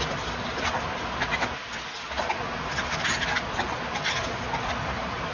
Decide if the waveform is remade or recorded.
recorded